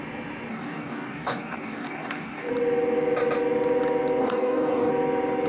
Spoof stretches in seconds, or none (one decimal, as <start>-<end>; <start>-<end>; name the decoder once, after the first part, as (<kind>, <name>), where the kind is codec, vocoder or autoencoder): 0.5-2.5 (codec, DAC); 4.2-4.9